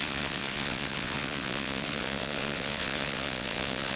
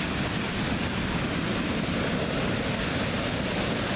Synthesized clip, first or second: first